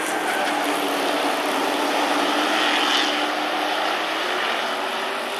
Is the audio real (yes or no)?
yes